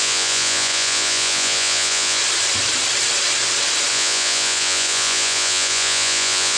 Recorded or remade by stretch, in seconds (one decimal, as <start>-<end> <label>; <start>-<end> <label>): 0.0-2.2 remade; 2.2-3.9 recorded; 3.9-6.6 remade